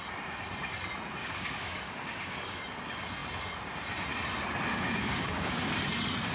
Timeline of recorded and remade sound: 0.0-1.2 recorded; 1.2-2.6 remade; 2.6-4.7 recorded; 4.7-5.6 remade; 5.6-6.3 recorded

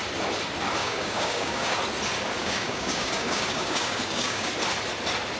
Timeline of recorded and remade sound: 0.0-0.8 recorded; 0.8-1.8 remade; 1.8-2.4 recorded; 2.4-4.5 remade; 4.5-5.4 recorded

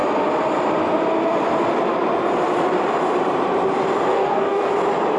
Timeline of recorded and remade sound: 0.0-4.1 recorded; 4.1-4.7 remade; 4.7-5.2 recorded

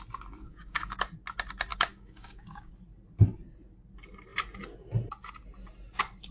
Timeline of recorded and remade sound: 0.0-0.4 recorded; 0.4-1.0 remade; 1.0-1.7 recorded; 1.7-2.7 remade; 2.7-6.3 recorded

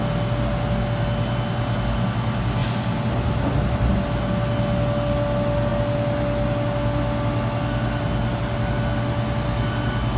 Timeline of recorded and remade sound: 0.0-10.2 recorded